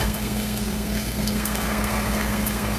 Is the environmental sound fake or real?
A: fake